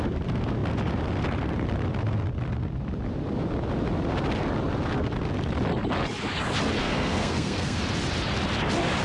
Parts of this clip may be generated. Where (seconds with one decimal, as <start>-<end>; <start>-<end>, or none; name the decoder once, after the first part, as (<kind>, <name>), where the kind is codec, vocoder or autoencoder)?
6.8-7.8 (codec, SNAC)